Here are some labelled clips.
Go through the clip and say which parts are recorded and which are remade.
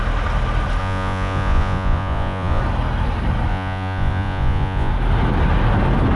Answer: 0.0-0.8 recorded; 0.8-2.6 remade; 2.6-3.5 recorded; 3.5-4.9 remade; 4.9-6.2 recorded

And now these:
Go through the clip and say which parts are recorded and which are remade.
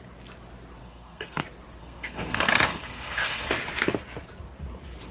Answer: 0.0-0.8 recorded; 0.8-1.4 remade; 1.4-1.8 recorded; 1.8-3.5 remade; 3.5-5.1 recorded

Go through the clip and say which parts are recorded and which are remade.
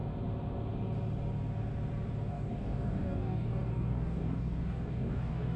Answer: 0.0-2.3 recorded; 2.3-5.6 remade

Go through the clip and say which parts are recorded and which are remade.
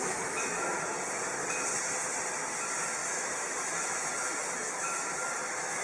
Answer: 0.0-0.9 remade; 0.9-2.6 recorded; 2.6-5.8 remade